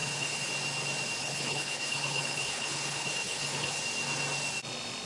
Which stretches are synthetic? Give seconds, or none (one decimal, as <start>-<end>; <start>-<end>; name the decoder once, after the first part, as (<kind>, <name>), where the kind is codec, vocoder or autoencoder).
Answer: 0.0-0.5 (codec, HILCodec); 1.2-3.8